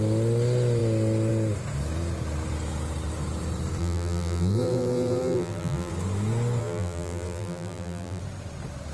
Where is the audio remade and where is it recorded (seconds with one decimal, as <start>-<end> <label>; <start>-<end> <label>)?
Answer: 0.0-3.8 recorded; 3.8-5.9 remade; 5.9-6.6 recorded; 6.6-8.2 remade; 8.2-8.9 recorded